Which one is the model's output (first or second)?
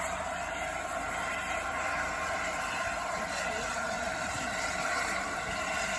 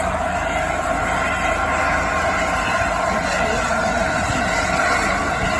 first